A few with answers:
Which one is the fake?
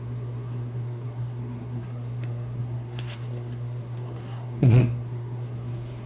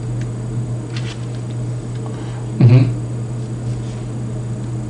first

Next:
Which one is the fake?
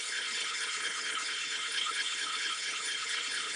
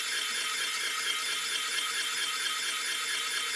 first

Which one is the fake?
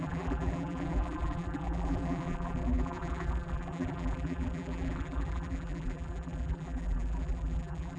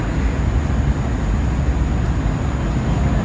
first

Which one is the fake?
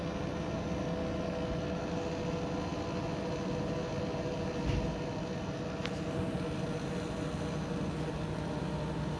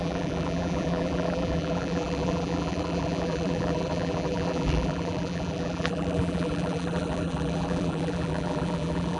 second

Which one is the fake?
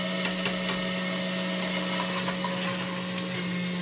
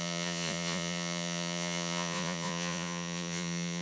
second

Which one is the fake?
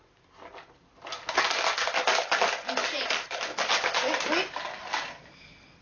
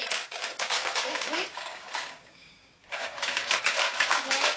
second